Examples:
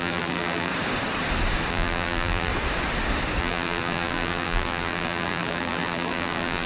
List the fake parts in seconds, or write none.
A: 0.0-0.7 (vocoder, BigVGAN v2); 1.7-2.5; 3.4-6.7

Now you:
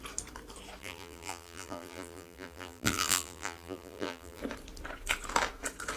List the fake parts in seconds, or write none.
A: 0.8-4.4 (vocoder, BigVGAN v2)

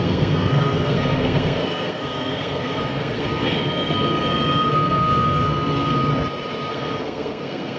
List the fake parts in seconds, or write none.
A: 0.0-6.1 (codec, SNAC); 6.7-7.8

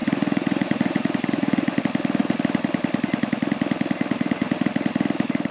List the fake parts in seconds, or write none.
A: 0.0-1.8 (vocoder, Vocos)

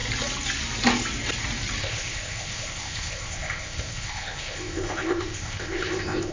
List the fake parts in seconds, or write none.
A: 1.8-6.3 (codec, ZipCodec)

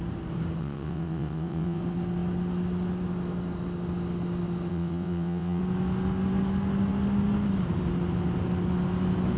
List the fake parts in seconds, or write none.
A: 0.6-1.8 (vocoder, WaveNeXt); 4.7-5.6